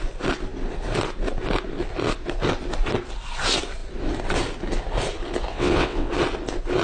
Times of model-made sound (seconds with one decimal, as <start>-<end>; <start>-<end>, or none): 5.5-6.1

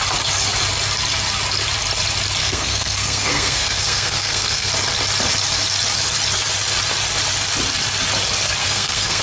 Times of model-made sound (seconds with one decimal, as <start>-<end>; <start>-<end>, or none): 2.4-4.7; 8.6-9.2

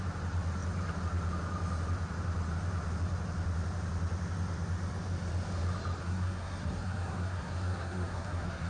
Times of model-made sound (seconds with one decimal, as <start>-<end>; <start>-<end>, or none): 6.0-8.7

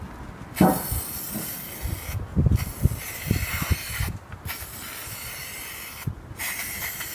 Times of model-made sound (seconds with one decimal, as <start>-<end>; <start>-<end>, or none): 2.3-6.1

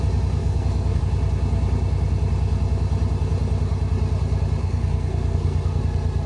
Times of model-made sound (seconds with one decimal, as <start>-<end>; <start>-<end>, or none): 0.4-1.0; 4.6-5.8

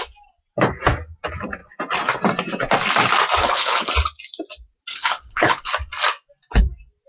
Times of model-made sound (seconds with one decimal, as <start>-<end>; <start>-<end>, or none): 3.4-3.9; 4.9-5.7

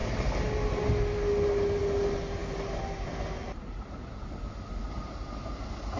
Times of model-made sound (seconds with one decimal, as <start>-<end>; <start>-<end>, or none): none

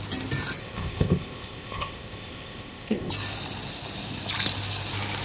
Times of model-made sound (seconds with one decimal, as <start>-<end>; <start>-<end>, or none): 0.6-3.1